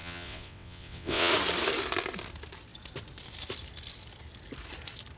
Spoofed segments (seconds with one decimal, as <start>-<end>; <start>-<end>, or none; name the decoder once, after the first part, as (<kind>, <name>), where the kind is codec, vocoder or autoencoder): 0.0-1.3 (vocoder, WaveNeXt)